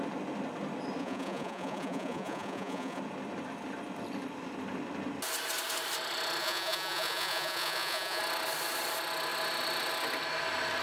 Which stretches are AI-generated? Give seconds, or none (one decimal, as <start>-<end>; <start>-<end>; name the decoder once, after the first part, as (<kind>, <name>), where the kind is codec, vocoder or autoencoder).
1.0-3.0 (vocoder, Vocos); 6.4-8.2